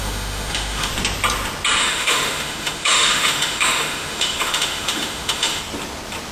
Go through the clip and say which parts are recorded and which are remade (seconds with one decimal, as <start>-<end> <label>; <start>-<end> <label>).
0.0-0.9 remade; 0.9-1.8 recorded; 1.8-5.6 remade; 5.6-6.3 recorded